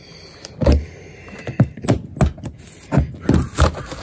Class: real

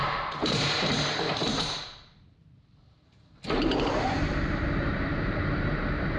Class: fake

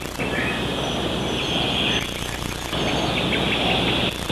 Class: real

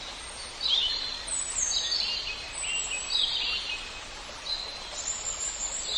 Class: real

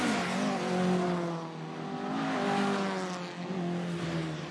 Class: real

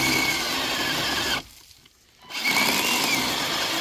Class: real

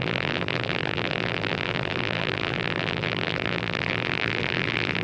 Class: fake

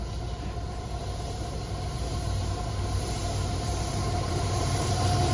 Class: fake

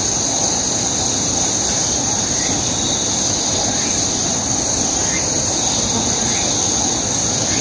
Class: real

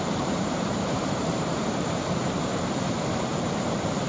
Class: fake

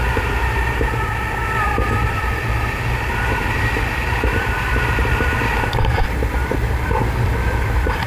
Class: fake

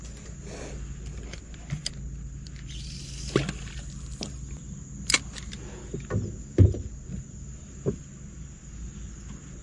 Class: real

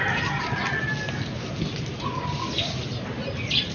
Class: real